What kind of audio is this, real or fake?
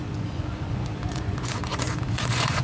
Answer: fake